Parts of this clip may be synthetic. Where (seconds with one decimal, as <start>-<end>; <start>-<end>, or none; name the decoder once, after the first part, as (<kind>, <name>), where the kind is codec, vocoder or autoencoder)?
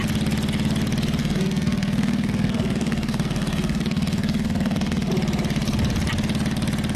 1.2-5.1 (codec, SNAC)